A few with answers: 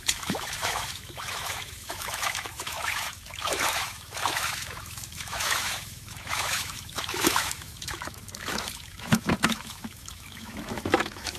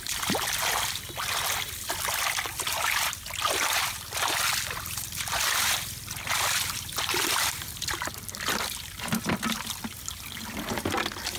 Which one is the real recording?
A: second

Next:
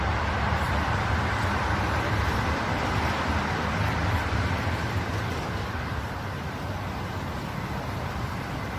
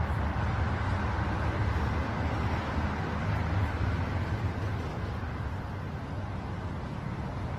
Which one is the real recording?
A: second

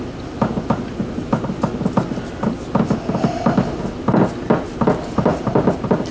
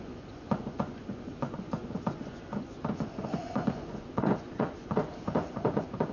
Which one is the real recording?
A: first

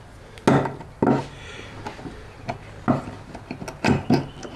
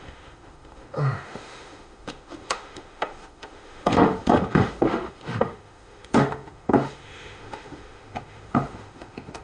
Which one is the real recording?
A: first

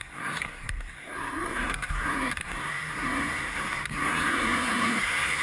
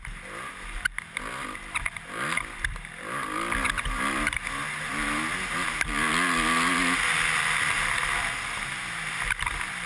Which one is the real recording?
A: second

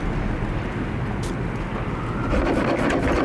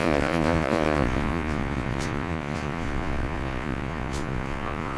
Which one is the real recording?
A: first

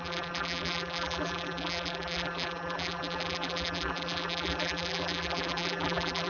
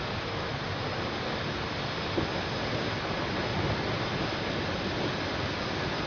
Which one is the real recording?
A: second